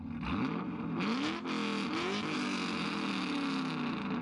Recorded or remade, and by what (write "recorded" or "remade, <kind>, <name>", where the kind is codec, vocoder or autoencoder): recorded